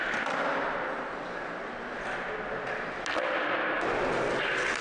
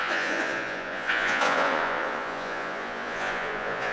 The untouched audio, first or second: first